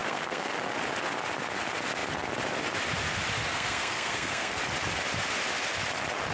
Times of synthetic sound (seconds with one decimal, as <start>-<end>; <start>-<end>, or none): 0.0-0.5; 3.5-4.6

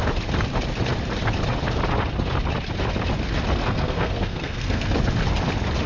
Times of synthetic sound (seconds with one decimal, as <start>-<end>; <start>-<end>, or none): 3.6-4.9

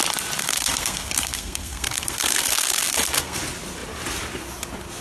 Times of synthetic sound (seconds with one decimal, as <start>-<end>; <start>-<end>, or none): 0.4-3.4